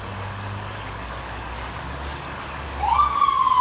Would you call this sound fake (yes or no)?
yes